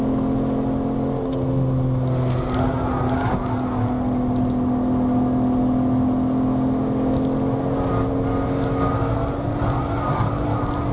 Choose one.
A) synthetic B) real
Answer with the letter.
B